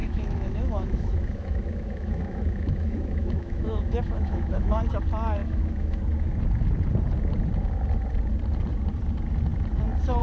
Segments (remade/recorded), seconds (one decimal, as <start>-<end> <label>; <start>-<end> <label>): 0.0-4.8 remade; 4.8-5.4 recorded; 5.4-6.0 remade; 6.0-10.2 recorded